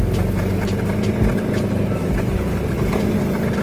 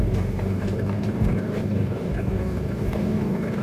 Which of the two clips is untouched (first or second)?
first